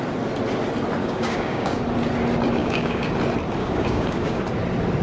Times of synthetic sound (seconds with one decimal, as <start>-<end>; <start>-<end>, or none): 1.0-1.8; 2.6-3.1; 3.6-4.4